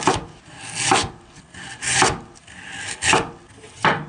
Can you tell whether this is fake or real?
real